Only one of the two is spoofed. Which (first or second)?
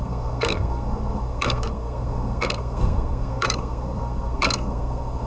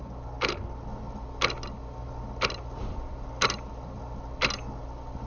first